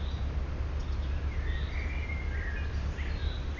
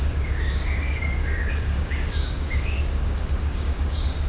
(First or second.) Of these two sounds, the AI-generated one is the second